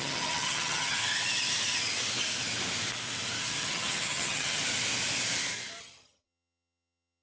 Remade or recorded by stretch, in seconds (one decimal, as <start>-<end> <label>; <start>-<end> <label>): 0.0-1.0 remade; 1.0-3.4 recorded; 3.4-4.6 remade; 4.6-5.8 recorded; 5.8-7.2 remade

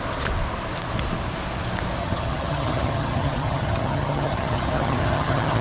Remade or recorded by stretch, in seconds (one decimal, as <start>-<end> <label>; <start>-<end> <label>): 0.0-2.0 recorded; 2.0-5.6 remade

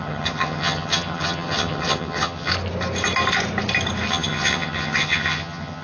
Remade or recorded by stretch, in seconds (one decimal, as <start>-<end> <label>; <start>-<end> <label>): 0.0-2.5 remade; 2.5-4.1 recorded; 4.1-5.8 remade

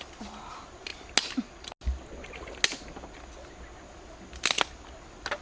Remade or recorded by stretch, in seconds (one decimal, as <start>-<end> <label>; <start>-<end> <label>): 0.0-5.4 recorded

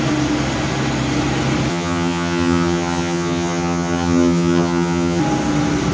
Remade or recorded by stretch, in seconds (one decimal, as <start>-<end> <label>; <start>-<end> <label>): 0.0-1.7 recorded; 1.7-5.2 remade; 5.2-5.9 recorded

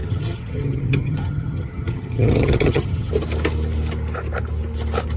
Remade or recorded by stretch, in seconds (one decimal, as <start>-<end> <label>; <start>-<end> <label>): 0.0-3.1 remade; 3.1-5.2 recorded

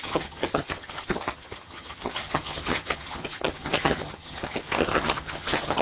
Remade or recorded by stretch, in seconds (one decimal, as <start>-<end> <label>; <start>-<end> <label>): 0.0-5.8 remade